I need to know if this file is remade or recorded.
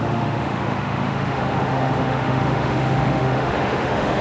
remade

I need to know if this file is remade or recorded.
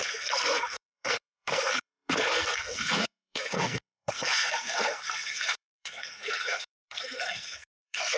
remade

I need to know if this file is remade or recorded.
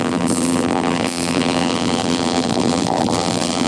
remade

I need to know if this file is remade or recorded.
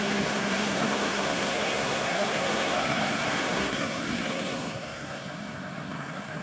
remade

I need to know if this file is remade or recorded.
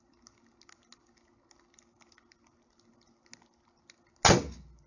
recorded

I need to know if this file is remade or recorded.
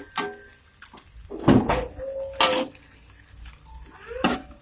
recorded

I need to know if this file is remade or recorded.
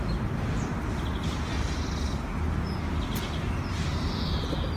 recorded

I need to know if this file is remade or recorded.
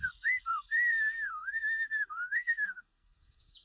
remade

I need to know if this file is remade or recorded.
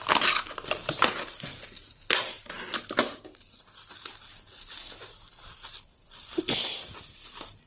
recorded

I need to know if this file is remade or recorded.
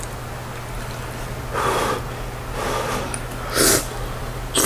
recorded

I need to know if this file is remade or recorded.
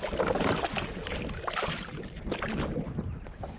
recorded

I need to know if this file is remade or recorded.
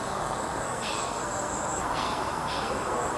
remade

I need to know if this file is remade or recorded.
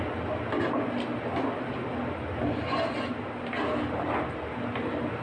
recorded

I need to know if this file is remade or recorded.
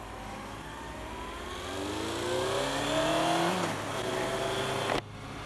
recorded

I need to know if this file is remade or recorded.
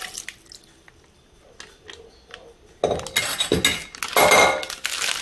recorded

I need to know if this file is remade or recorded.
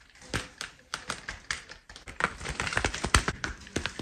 remade